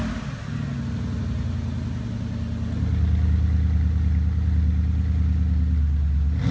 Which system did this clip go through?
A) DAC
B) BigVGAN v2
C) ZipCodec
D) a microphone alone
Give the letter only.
D